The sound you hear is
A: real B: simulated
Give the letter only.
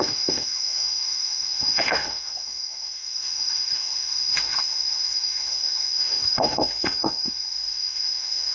B